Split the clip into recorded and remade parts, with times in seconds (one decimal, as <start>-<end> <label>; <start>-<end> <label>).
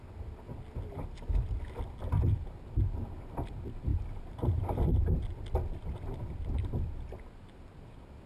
0.0-3.9 recorded; 3.9-5.0 remade; 5.0-8.3 recorded